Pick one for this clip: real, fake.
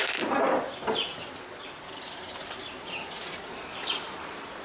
real